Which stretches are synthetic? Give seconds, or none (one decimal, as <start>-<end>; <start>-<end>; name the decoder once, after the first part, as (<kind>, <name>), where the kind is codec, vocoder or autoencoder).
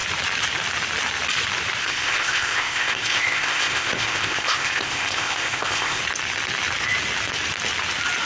1.8-6.0 (codec, ZipCodec)